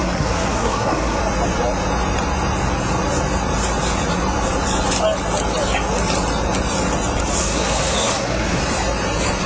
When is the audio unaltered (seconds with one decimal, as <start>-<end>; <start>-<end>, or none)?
1.2-7.4; 8.6-9.5